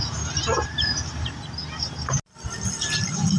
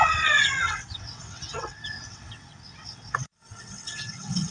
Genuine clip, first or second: first